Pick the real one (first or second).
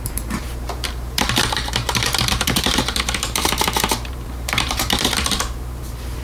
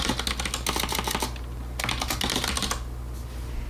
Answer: second